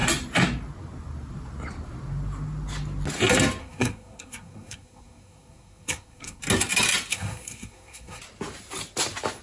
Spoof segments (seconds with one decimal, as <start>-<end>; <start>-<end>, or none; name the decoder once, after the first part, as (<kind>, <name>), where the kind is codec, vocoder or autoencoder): 3.6-6.4 (codec, SNAC); 7.1-8.2